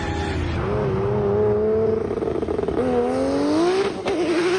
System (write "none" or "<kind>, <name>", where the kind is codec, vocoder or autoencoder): none